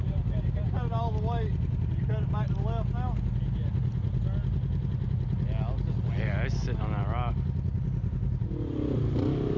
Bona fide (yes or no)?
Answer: yes